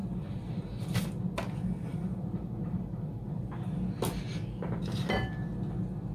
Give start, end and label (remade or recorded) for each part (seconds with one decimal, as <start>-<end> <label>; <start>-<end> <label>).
0.0-1.0 remade; 1.0-1.9 recorded; 1.9-3.5 remade; 3.5-6.1 recorded